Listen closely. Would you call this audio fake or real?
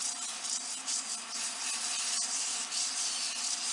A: real